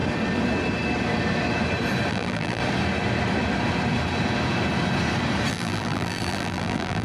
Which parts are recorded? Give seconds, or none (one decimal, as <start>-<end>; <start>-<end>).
0.0-2.1; 2.6-5.5